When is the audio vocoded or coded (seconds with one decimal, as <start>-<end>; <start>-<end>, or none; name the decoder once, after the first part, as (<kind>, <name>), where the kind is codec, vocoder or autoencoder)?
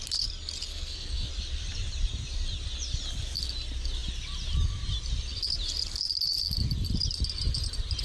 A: 0.7-1.3 (codec, SNAC)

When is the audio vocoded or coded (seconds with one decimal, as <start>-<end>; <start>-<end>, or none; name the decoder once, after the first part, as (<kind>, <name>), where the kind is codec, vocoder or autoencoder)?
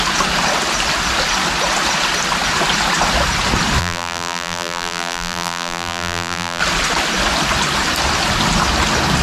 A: 3.8-6.6 (vocoder, BigVGAN v2)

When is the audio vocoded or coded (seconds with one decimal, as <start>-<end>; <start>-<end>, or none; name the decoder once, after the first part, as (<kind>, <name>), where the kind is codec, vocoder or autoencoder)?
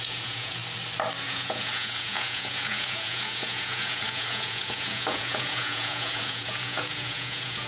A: 0.0-0.6 (vocoder, Vocos); 1.2-7.7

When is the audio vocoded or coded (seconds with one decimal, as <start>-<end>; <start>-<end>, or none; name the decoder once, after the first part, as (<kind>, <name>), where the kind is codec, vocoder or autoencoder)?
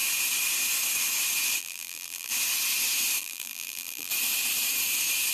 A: 1.6-2.3 (vocoder, BigVGAN v2); 3.2-4.1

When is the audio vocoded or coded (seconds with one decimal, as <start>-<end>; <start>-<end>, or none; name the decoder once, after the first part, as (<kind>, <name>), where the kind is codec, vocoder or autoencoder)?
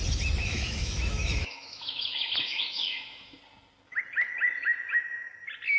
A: 0.4-3.4 (autoencoder, DAC-VAE)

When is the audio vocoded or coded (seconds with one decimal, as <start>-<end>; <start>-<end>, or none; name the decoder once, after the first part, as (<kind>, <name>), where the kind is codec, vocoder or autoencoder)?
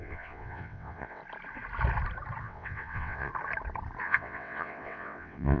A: 0.0-1.2 (vocoder, WaveNeXt); 2.4-3.3; 4.0-5.6